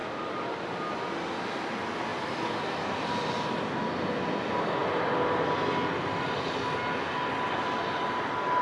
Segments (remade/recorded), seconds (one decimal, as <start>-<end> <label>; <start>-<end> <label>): 0.0-8.6 recorded